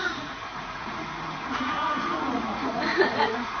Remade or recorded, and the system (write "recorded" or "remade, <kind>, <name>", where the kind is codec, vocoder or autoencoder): remade, vocoder, Vocos